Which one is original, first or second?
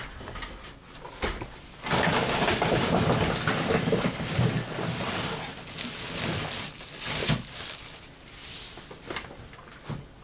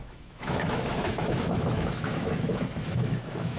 first